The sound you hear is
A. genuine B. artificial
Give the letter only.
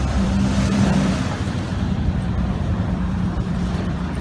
B